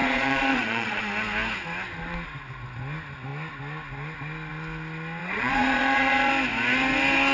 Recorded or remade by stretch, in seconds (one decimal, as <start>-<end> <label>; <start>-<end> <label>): 0.0-1.0 remade; 1.0-5.2 recorded; 5.2-6.3 remade; 6.3-7.3 recorded